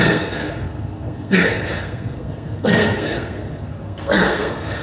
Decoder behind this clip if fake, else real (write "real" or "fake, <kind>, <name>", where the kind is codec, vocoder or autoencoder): fake, codec, SNAC